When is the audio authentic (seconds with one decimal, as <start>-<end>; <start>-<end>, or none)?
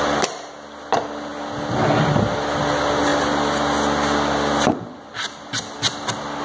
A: 0.0-6.4